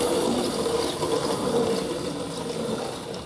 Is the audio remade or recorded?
recorded